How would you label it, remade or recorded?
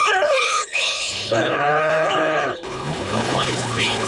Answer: remade